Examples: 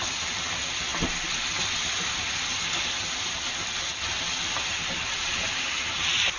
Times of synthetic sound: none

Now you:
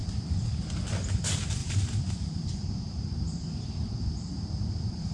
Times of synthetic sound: 1.6-3.9 (vocoder, BigVGAN v2)

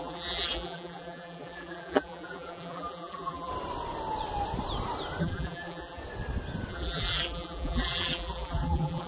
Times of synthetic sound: 0.0-3.5 (vocoder, BigVGAN v2); 5.2-6.0; 6.7-9.1

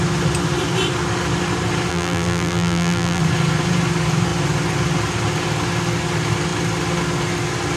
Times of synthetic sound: 1.9-3.2 (vocoder, BigVGAN v2)